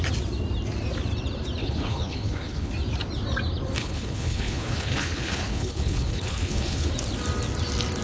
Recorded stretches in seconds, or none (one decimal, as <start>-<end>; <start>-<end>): 0.0-1.6; 2.7-3.8; 6.9-8.0